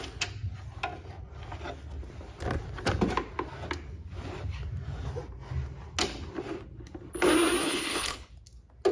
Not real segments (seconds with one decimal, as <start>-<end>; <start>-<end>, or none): 7.6-8.3